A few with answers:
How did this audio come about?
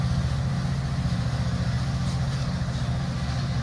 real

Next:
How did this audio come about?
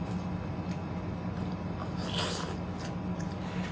real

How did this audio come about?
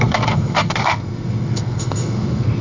fake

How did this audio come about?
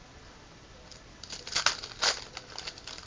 real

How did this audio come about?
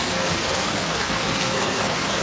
fake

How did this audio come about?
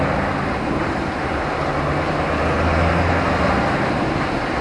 real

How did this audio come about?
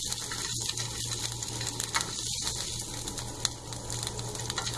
real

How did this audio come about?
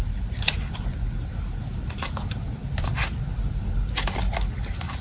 real